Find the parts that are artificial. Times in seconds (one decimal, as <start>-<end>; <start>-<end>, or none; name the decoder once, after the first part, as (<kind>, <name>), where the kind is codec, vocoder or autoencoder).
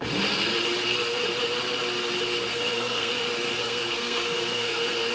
2.5-3.1 (codec, SNAC); 3.6-5.1